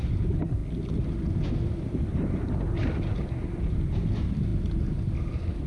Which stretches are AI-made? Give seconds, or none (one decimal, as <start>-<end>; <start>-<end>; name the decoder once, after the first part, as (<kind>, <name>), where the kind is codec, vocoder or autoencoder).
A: none